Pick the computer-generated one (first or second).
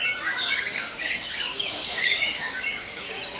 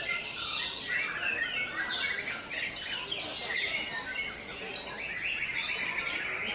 first